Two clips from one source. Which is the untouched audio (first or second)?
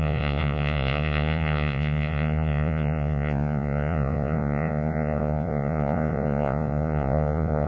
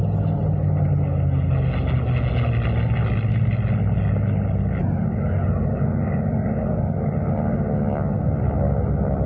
second